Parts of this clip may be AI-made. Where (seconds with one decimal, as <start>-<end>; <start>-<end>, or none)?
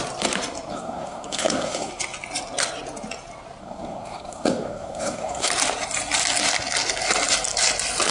0.7-1.9; 3.6-5.5